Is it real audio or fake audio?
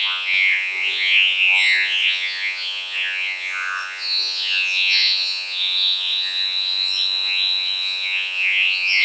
fake